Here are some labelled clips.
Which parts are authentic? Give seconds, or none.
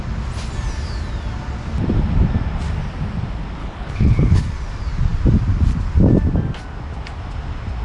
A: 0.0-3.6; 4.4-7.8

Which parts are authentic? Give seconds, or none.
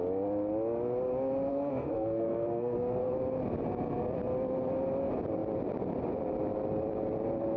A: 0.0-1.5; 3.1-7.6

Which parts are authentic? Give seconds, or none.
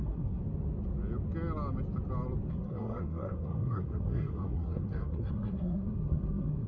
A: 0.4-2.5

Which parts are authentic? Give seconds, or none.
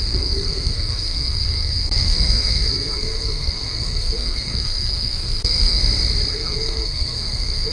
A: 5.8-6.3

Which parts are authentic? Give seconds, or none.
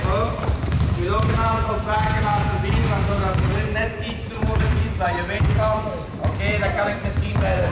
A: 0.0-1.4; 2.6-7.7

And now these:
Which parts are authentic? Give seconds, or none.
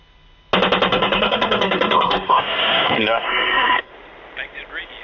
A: 0.0-0.9; 3.9-5.0